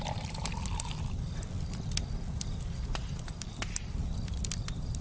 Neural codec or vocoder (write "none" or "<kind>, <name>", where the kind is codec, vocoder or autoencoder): none